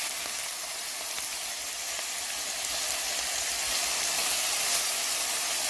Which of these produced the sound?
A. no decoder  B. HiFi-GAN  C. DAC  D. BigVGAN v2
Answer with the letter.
D